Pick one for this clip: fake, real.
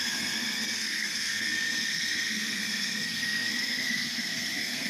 fake